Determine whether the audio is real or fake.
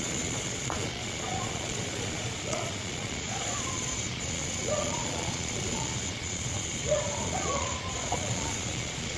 fake